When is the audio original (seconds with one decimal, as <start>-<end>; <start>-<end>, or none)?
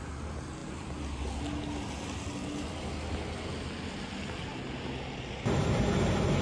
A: 0.0-6.4